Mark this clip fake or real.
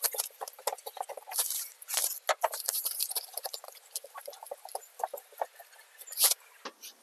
fake